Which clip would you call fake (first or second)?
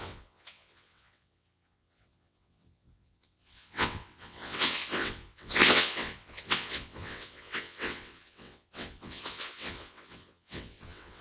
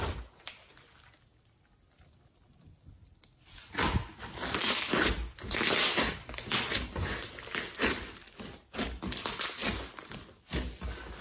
first